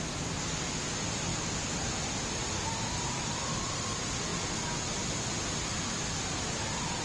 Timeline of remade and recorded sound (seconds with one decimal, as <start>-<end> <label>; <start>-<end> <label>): 0.0-7.0 recorded